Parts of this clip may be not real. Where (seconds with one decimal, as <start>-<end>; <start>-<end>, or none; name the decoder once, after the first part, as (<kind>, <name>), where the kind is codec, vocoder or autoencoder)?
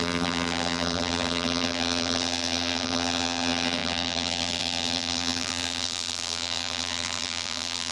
0.0-7.9 (vocoder, BigVGAN v2)